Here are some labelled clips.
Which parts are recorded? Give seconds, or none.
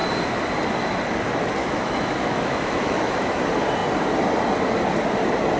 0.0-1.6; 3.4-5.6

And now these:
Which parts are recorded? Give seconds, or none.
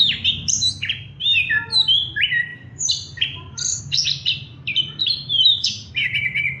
0.0-2.5; 3.8-4.7; 5.9-6.6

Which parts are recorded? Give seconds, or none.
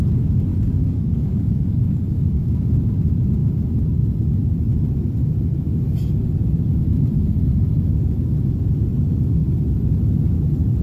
0.0-0.5; 2.5-10.8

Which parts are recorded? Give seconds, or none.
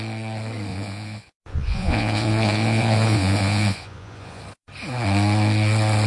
0.0-0.7; 4.4-6.1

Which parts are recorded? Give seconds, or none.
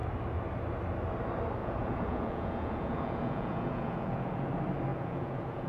0.0-1.6; 4.5-4.9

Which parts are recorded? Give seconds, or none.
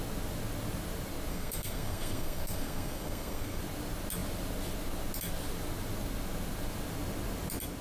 0.0-1.3; 3.6-7.8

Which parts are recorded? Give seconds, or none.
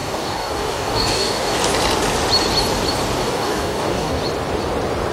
1.6-3.2; 4.2-5.1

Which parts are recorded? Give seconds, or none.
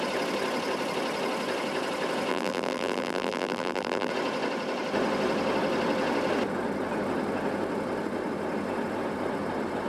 0.0-2.3; 4.1-9.9